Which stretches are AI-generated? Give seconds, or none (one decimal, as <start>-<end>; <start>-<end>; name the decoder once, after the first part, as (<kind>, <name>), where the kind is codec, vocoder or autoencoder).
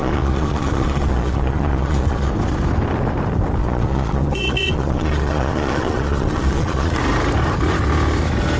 0.0-2.3 (vocoder, Vocos); 3.6-7.0